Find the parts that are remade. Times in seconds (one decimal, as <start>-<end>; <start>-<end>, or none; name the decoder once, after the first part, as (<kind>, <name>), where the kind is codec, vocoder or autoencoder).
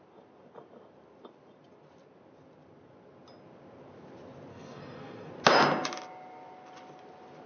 4.5-5.3 (codec, SNAC)